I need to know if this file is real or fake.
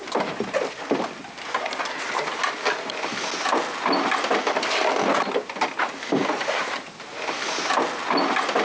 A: real